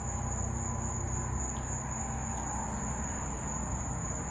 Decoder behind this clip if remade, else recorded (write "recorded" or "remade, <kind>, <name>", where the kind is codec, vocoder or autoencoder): recorded